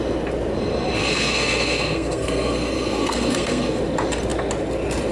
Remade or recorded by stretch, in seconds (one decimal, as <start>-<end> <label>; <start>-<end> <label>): 0.0-1.0 recorded; 1.0-3.8 remade; 3.8-5.1 recorded